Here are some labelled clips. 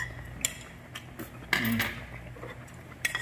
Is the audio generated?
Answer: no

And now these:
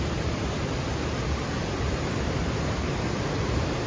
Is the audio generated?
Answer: no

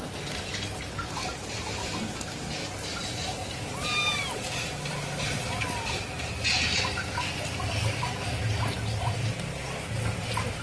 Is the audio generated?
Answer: no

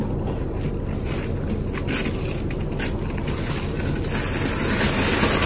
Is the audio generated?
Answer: no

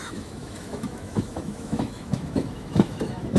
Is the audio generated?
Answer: yes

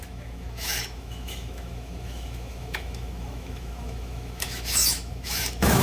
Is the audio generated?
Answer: yes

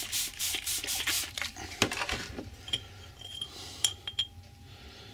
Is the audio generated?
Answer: yes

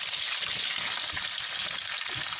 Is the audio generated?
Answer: no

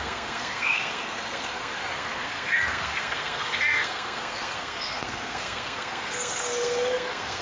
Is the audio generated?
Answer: yes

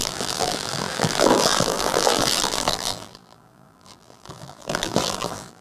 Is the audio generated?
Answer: yes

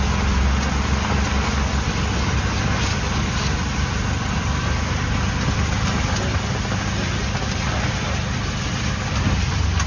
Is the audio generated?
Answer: no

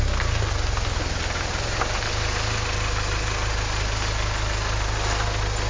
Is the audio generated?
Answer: no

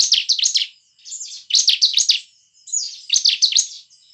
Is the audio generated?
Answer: no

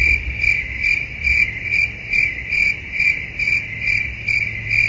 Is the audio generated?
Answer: no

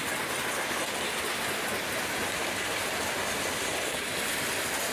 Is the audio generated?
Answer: no